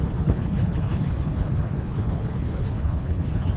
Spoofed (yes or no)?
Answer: yes